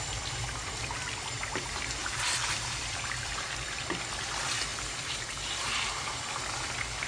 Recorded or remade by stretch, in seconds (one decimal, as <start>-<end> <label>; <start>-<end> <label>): 0.0-7.1 remade